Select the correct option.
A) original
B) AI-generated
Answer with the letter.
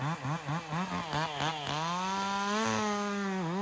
A